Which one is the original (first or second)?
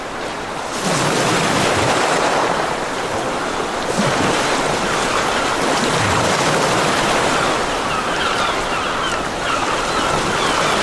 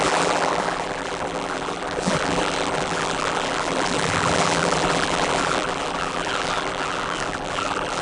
first